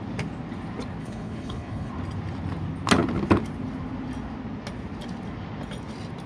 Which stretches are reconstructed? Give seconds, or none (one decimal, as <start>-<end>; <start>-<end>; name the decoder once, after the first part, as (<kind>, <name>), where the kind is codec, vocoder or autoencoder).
1.0-1.9 (codec, HILCodec)